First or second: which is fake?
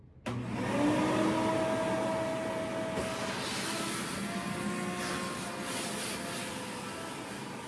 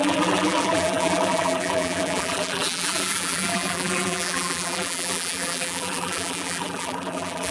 second